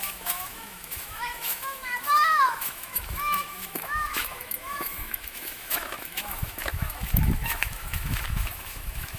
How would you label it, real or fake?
fake